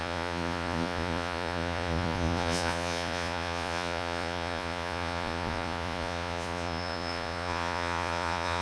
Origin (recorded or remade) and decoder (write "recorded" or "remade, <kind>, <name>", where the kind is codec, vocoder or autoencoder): remade, vocoder, Vocos